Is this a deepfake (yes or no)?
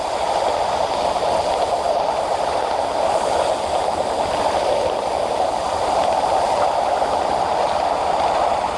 no